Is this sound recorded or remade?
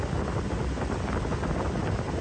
recorded